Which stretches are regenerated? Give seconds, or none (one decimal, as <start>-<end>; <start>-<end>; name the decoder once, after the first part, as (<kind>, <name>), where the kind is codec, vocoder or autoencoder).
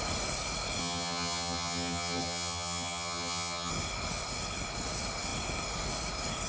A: 0.8-3.7 (vocoder, HiFi-GAN)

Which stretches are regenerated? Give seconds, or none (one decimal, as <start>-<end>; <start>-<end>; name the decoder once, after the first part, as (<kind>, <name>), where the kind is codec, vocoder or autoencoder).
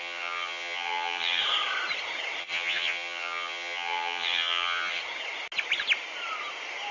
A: 0.0-1.4 (vocoder, HiFi-GAN); 2.4-5.0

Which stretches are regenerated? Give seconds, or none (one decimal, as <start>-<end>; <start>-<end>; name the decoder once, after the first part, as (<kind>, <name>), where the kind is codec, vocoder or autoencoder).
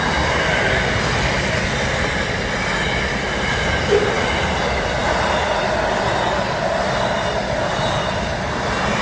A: none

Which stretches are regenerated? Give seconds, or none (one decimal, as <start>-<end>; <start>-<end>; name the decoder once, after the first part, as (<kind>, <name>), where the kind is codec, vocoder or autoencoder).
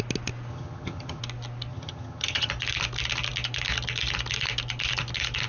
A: 0.5-1.2 (vocoder, HiFi-GAN); 1.7-2.5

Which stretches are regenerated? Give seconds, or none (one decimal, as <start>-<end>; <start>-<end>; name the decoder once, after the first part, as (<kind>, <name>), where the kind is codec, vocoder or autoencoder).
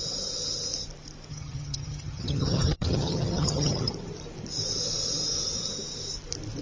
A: 1.3-3.9 (vocoder, HiFi-GAN)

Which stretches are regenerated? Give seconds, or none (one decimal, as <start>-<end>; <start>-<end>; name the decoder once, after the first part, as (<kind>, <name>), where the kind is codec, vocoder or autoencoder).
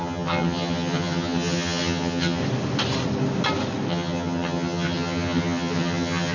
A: 0.0-2.4 (vocoder, HiFi-GAN); 3.9-6.3